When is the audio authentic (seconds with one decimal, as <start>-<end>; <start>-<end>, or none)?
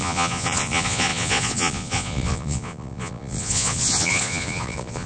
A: none